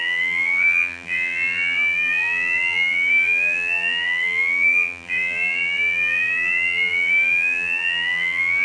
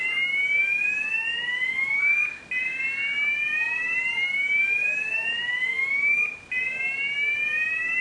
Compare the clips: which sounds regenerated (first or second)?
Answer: first